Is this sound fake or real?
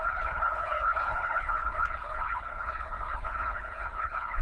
fake